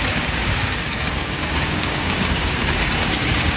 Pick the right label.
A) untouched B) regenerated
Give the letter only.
B